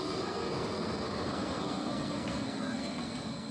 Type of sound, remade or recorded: remade